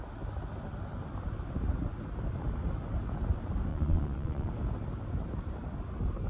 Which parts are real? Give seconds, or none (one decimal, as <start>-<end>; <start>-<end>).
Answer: 0.0-3.7; 4.5-6.3